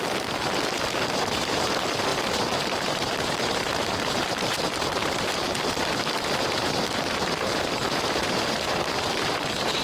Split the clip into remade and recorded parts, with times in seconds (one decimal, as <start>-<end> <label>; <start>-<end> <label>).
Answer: 0.0-9.8 remade